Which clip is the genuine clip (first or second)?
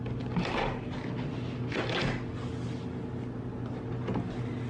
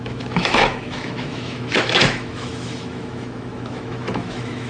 first